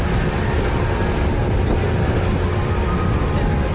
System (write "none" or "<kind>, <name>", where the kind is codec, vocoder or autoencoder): none